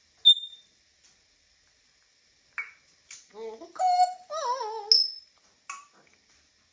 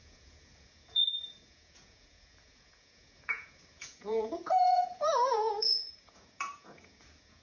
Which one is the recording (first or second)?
first